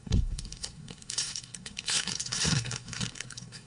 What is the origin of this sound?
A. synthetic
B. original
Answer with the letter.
A